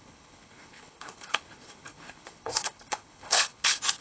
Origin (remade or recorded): remade